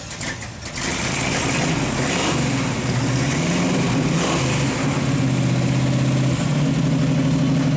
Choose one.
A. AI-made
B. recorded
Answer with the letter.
B